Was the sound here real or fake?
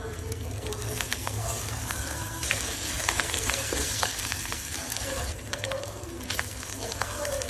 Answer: fake